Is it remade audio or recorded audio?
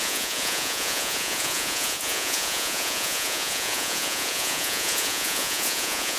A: remade